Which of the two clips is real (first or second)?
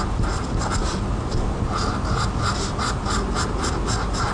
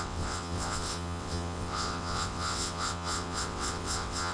first